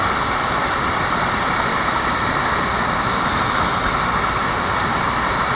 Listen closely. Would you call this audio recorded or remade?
recorded